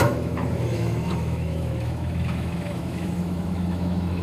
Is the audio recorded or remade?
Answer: remade